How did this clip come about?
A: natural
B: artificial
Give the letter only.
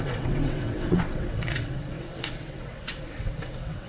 B